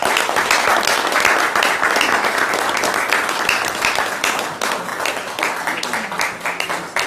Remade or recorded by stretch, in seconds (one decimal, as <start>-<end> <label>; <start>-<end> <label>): 0.0-7.1 recorded